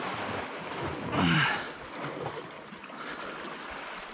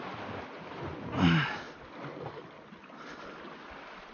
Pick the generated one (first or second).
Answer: first